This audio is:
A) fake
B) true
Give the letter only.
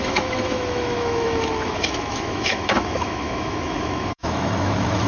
A